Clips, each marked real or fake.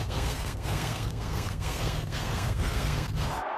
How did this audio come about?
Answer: fake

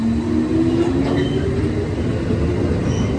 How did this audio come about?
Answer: real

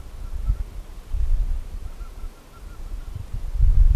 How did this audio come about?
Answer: real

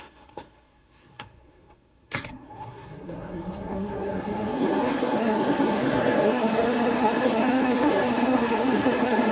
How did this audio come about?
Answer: fake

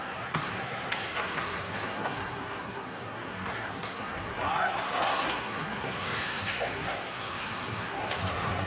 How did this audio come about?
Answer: fake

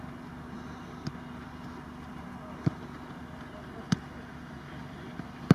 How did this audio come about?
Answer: real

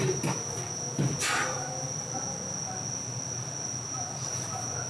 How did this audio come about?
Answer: real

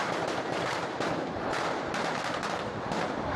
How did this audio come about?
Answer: real